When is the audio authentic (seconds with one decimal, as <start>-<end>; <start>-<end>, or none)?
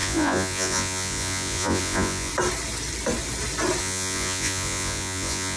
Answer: 2.3-3.8